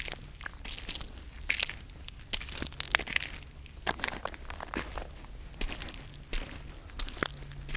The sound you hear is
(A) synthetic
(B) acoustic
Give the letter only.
B